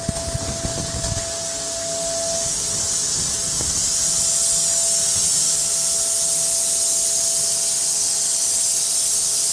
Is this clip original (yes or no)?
yes